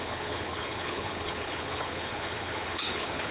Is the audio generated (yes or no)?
yes